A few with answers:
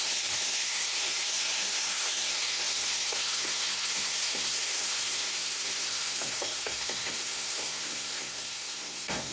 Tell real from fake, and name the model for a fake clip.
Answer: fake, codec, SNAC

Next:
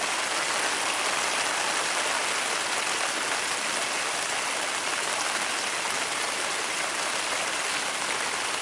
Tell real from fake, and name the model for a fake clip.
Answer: real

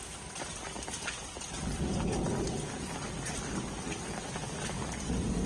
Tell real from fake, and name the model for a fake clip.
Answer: real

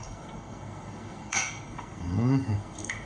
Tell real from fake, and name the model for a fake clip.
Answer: fake, codec, SNAC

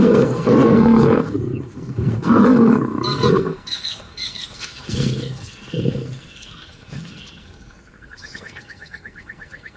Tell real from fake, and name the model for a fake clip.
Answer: fake, codec, SNAC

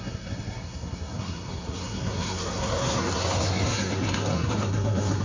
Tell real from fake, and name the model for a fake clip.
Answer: fake, codec, SNAC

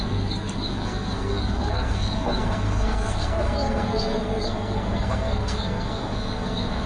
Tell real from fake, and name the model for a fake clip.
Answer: fake, codec, SNAC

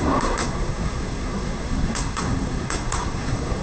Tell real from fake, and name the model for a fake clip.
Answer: fake, codec, SNAC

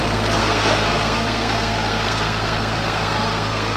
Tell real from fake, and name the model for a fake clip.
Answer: fake, codec, SNAC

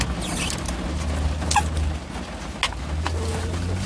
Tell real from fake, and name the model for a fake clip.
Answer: real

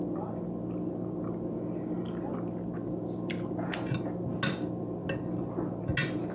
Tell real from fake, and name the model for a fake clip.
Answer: real